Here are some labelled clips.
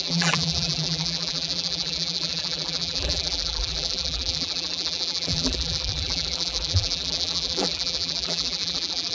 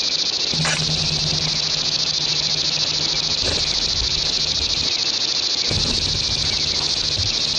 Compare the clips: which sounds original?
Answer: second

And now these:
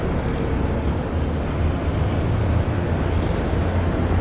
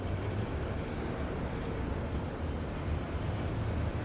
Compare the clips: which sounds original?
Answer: first